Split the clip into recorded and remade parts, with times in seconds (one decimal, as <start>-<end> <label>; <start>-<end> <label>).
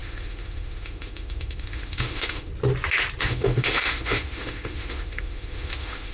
0.0-2.5 remade; 2.5-3.2 recorded; 3.2-6.1 remade